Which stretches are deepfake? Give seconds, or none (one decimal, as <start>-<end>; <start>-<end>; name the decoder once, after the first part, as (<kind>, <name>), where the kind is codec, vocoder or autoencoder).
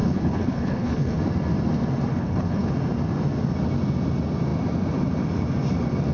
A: 0.0-1.2 (codec, HILCodec); 2.1-2.7